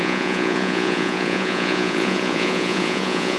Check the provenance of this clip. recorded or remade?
remade